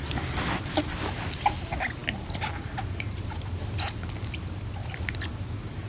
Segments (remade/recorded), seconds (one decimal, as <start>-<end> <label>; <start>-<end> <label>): 0.0-5.9 remade